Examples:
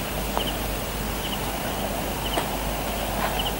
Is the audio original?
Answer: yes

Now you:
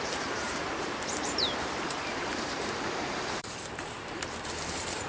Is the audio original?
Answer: no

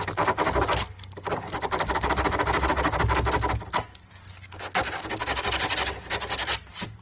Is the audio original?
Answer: yes